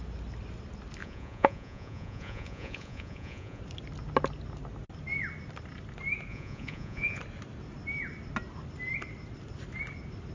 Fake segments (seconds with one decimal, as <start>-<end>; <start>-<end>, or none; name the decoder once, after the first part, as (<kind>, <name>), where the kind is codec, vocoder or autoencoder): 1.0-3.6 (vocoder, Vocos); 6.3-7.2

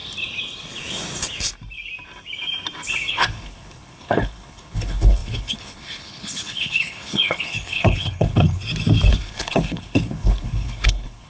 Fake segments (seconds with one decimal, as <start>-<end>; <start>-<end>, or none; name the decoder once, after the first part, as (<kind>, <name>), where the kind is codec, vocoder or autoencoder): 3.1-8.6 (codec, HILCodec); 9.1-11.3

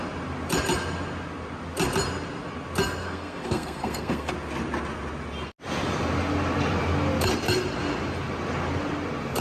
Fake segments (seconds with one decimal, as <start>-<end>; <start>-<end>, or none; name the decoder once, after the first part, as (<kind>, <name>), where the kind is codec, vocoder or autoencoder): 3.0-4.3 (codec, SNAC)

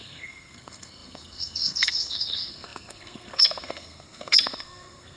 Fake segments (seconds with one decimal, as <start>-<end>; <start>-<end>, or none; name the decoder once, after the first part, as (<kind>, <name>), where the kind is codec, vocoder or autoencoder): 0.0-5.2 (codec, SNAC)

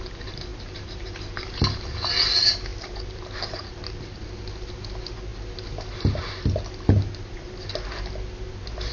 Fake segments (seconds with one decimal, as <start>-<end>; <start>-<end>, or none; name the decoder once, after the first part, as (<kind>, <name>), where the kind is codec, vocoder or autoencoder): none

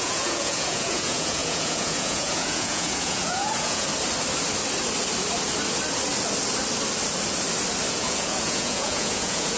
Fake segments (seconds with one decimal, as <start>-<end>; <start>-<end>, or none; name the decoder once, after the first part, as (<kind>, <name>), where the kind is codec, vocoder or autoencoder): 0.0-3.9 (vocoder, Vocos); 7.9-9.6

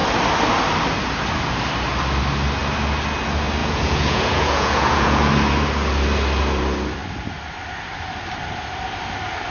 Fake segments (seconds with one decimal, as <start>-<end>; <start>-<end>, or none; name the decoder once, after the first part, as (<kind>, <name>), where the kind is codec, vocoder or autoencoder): 3.6-5.3 (vocoder, Vocos)